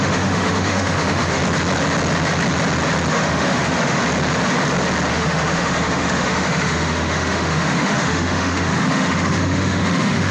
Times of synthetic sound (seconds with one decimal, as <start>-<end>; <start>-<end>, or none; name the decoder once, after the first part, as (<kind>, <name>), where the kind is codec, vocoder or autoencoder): 0.0-1.4 (autoencoder, DAC-VAE); 3.1-4.0; 5.1-10.3